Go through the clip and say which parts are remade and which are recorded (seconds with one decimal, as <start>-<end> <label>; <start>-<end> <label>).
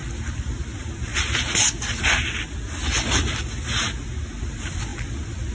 0.0-1.1 remade; 1.1-4.4 recorded; 4.4-5.5 remade